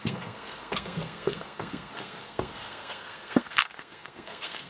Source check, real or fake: fake